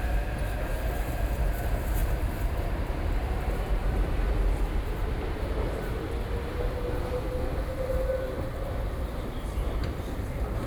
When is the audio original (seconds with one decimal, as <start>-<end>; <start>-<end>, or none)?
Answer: 0.0-2.0; 3.0-3.8; 4.3-5.0; 6.1-10.7